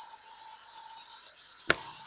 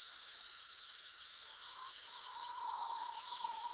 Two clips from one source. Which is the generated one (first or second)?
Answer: second